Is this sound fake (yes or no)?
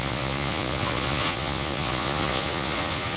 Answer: yes